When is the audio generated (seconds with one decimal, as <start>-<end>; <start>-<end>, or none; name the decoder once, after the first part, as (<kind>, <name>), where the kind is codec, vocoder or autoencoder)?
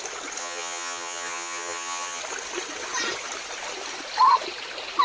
0.4-2.2 (vocoder, HiFi-GAN)